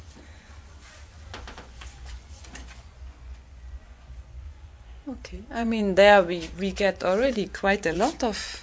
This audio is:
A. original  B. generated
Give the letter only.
B